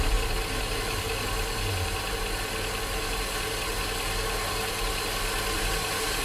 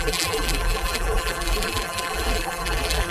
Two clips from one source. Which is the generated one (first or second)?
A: second